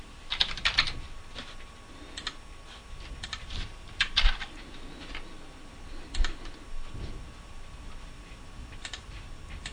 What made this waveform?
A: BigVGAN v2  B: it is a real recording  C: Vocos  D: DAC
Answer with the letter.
B